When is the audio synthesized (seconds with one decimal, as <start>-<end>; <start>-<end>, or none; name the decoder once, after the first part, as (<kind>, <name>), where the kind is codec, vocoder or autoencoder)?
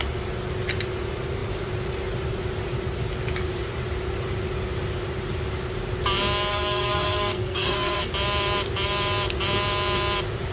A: 6.5-8.1 (codec, SNAC)